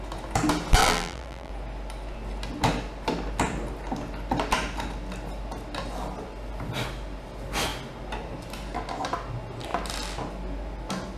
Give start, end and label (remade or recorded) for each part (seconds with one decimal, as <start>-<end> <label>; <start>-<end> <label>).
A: 0.0-0.8 recorded; 0.8-1.5 remade; 1.5-11.2 recorded